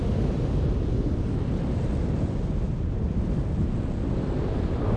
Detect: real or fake real